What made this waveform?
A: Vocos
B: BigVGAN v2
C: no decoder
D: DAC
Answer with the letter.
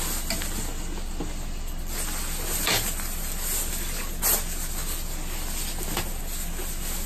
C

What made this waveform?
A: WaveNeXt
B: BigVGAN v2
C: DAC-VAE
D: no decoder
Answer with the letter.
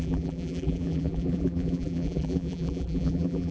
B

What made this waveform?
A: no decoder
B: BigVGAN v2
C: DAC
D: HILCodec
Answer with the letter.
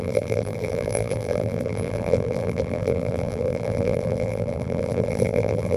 B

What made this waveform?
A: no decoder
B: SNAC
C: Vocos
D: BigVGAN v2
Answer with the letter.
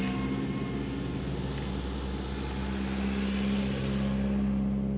A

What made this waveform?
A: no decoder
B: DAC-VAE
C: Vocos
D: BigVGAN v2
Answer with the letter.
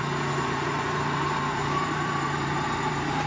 D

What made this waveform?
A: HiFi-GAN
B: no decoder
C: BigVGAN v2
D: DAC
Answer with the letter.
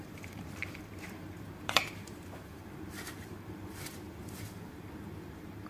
C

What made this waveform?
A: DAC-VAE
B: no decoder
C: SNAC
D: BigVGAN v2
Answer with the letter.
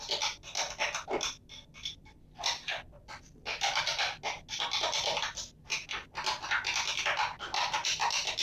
B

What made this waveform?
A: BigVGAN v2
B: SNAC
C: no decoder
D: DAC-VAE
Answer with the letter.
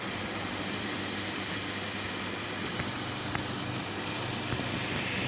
A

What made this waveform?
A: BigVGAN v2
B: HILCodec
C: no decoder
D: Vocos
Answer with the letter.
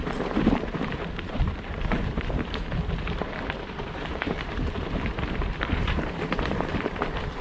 A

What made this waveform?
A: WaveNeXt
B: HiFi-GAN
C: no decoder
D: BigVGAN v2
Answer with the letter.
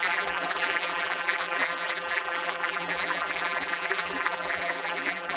D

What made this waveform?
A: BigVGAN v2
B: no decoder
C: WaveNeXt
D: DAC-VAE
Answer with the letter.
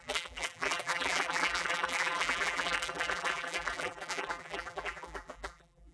A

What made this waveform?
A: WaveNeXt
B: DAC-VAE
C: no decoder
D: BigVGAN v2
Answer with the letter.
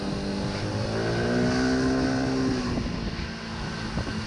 C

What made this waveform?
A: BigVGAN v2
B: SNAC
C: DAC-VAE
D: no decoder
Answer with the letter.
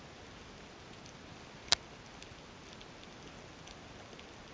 D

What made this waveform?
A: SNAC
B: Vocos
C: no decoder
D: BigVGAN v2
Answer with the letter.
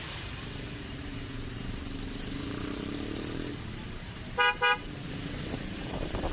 D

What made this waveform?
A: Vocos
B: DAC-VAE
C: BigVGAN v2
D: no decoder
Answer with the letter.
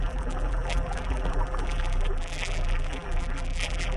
C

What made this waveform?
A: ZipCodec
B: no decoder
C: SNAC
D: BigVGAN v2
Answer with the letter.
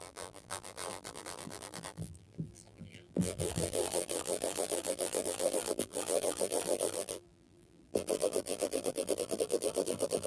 D